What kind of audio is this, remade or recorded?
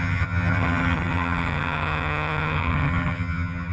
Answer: remade